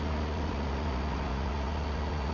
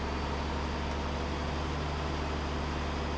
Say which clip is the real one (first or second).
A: second